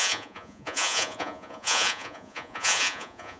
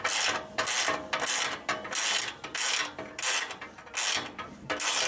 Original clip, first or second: second